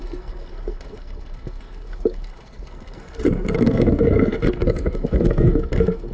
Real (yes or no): no